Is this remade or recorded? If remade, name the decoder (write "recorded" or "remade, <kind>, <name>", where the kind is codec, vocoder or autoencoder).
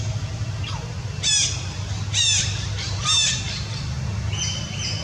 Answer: recorded